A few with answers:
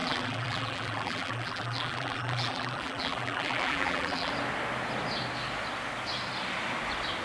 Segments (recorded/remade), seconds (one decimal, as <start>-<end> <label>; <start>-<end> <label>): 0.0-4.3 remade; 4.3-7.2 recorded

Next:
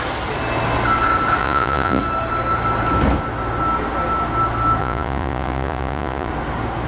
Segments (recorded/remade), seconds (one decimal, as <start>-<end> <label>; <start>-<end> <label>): 0.0-1.4 recorded; 1.4-2.0 remade; 2.0-4.8 recorded; 4.8-6.3 remade; 6.3-6.9 recorded

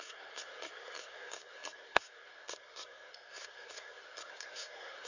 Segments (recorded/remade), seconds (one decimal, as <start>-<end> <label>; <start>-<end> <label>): 0.0-5.1 remade